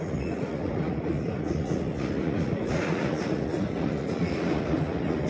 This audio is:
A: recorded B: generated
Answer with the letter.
B